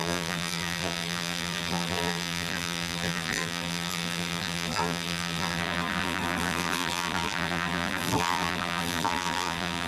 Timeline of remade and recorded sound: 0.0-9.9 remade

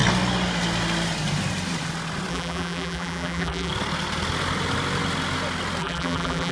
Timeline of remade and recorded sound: 0.0-2.3 recorded; 2.3-3.7 remade; 3.7-5.8 recorded; 5.8-6.5 remade

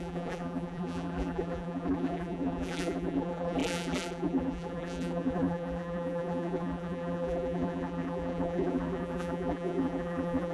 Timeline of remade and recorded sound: 0.0-10.5 remade